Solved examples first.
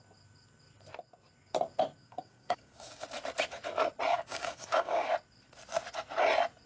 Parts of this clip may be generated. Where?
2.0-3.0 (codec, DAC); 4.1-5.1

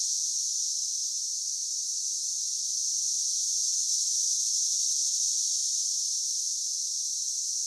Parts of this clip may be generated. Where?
1.0-2.1 (vocoder, Vocos); 5.6-6.1

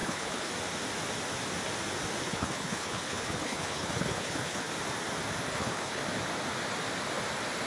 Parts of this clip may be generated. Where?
0.0-0.5 (codec, HILCodec); 2.2-4.7; 5.5-6.0

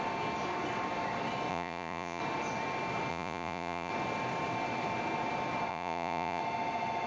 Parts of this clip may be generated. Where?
1.5-2.2 (vocoder, Vocos); 3.1-3.9; 5.7-6.4

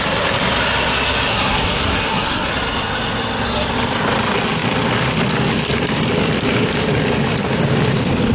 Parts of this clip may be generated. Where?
1.3-2.5 (codec, SNAC)